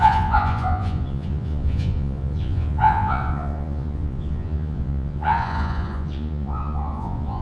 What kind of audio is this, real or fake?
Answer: fake